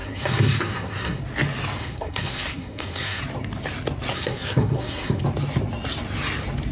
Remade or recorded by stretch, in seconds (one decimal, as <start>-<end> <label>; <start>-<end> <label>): 0.0-1.2 remade; 1.2-1.8 recorded; 1.8-3.2 remade; 3.2-4.1 recorded; 4.1-5.2 remade; 5.2-6.7 recorded